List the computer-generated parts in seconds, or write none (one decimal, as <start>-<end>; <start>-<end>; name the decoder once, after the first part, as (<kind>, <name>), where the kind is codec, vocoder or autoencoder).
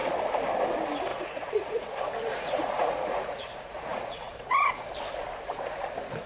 1.1-4.9 (vocoder, Vocos)